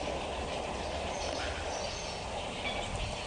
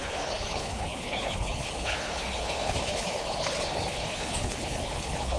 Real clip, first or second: first